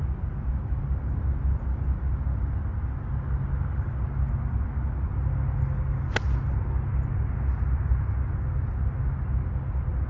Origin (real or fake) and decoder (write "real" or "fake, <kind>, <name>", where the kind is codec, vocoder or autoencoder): real